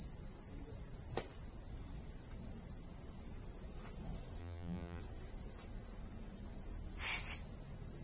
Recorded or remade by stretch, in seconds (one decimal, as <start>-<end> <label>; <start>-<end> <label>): 0.0-4.4 recorded; 4.4-5.0 remade; 5.0-8.0 recorded

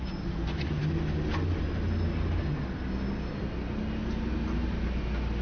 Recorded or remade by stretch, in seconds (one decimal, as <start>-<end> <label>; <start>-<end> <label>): 0.0-5.4 recorded

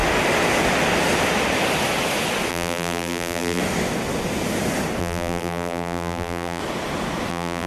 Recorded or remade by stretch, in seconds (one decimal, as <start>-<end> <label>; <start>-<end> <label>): 0.0-2.5 recorded; 2.5-3.6 remade; 3.6-5.0 recorded; 5.0-6.6 remade; 6.6-7.3 recorded; 7.3-7.7 remade

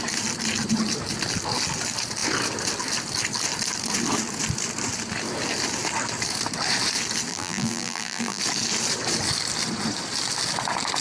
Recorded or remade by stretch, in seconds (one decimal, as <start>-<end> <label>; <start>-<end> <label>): 0.0-7.3 recorded; 7.3-8.4 remade; 8.4-11.0 recorded

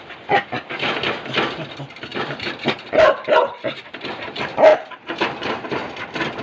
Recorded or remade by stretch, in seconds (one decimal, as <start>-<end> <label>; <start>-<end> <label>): 0.0-2.1 recorded; 2.1-3.8 remade; 3.8-4.7 recorded; 4.7-5.7 remade; 5.7-6.4 recorded